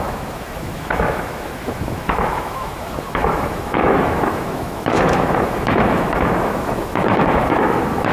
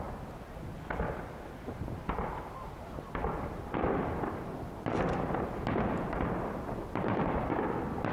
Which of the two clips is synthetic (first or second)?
first